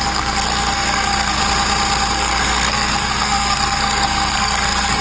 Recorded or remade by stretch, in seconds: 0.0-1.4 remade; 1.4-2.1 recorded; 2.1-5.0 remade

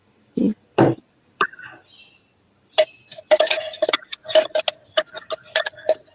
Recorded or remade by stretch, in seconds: 0.0-2.7 remade; 2.7-6.1 recorded